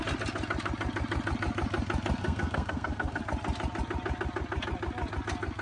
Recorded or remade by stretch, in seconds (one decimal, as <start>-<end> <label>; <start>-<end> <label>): 0.0-2.2 recorded; 2.2-3.2 remade; 3.2-5.6 recorded